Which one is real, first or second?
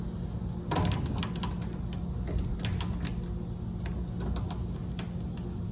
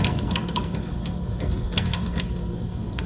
first